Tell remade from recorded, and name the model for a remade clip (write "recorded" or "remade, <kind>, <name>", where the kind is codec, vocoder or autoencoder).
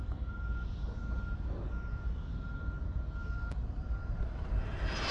recorded